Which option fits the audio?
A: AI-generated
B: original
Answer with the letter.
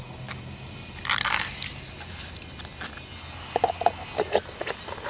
B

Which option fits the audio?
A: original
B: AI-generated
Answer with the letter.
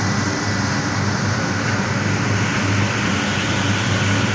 A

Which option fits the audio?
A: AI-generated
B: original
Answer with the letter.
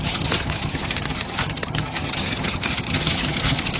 A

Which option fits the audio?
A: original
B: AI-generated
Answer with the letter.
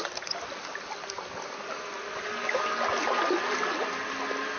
A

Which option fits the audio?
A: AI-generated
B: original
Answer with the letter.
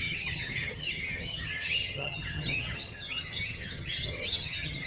A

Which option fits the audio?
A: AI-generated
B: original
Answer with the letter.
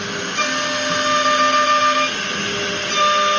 B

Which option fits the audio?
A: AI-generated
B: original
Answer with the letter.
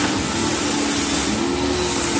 B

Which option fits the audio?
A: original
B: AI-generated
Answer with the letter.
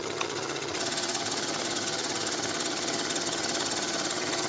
B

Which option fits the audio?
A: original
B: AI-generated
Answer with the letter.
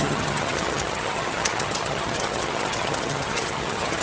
B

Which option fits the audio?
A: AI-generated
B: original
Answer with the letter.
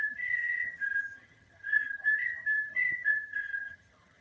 A